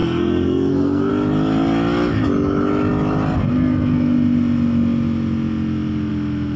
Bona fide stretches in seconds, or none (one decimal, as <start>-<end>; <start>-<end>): 1.1-6.6